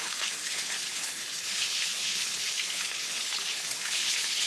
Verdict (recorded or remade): remade